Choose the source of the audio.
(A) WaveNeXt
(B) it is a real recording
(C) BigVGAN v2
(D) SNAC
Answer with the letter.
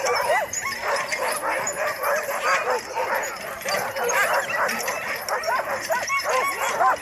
B